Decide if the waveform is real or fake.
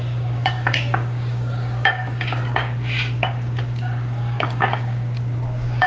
fake